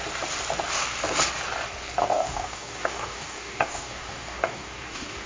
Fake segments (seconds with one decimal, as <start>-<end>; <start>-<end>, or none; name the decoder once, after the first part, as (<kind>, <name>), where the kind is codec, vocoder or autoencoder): 2.0-5.3 (codec, DAC)